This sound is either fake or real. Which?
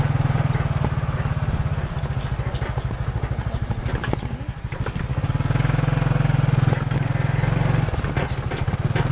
real